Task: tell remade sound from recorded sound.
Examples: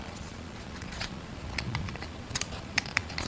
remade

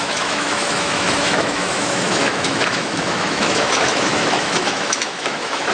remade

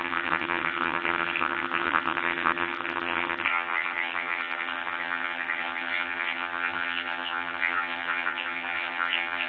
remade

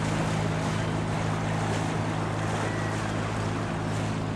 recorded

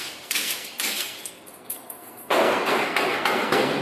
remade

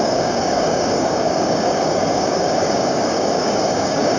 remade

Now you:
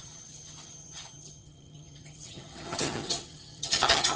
remade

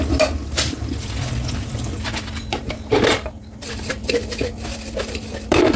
remade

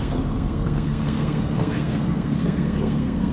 remade